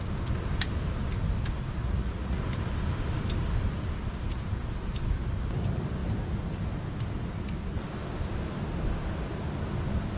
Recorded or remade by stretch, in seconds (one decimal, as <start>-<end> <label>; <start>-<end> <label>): 0.0-1.8 recorded; 1.8-2.4 remade; 2.4-10.2 recorded